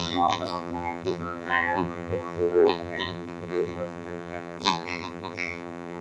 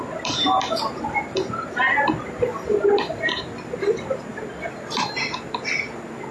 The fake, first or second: first